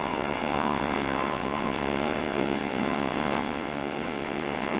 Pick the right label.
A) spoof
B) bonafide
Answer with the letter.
A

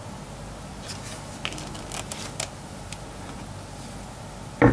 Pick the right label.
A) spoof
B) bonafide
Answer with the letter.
B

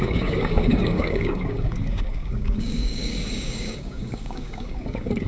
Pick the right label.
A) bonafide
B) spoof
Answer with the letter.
B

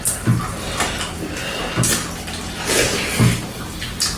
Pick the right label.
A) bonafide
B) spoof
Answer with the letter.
A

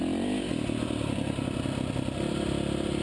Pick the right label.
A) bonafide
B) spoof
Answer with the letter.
A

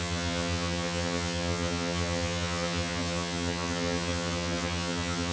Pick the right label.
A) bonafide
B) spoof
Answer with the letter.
B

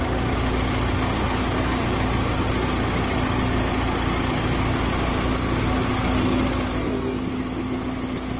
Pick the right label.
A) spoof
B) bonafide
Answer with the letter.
B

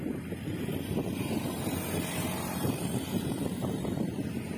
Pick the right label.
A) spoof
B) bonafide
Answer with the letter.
A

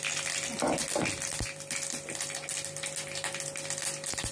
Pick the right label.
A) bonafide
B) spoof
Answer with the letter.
A